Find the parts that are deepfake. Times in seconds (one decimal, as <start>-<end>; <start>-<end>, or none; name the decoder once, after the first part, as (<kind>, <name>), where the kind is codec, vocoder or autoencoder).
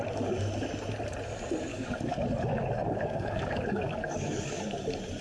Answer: 1.7-4.8 (codec, DAC)